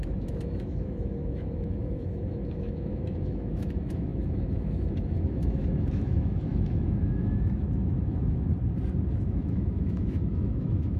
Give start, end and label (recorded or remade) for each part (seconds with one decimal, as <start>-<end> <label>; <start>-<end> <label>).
0.0-8.5 remade; 8.5-9.1 recorded; 9.1-11.0 remade